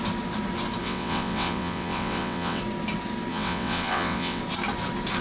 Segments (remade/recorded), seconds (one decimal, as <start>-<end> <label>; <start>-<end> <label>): 0.0-0.8 recorded; 0.8-2.6 remade; 2.6-3.3 recorded; 3.3-4.4 remade; 4.4-5.2 recorded